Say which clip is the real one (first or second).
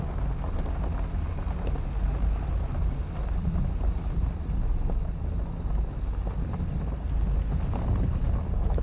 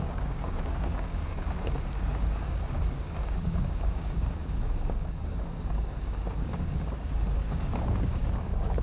first